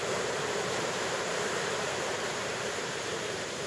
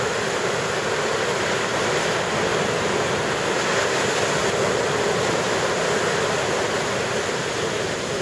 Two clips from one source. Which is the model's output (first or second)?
first